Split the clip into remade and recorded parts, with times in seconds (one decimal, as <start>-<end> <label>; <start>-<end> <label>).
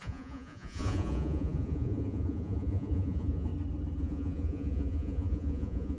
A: 0.0-3.5 remade; 3.5-4.0 recorded; 4.0-6.0 remade